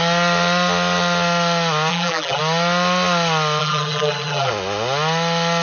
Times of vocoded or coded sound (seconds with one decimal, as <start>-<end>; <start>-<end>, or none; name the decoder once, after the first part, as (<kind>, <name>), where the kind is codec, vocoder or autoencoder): 1.9-2.4 (vocoder, BigVGAN v2); 3.6-4.5